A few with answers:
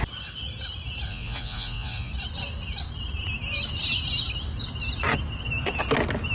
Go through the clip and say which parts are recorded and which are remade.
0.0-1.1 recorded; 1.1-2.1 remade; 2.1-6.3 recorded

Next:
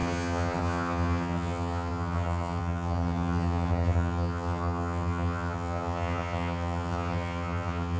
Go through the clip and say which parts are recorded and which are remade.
0.0-8.0 remade

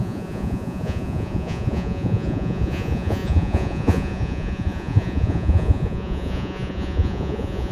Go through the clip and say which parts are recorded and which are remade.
0.0-7.7 remade

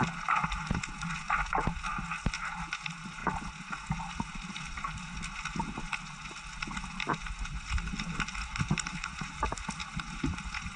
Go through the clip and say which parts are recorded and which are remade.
0.0-10.8 recorded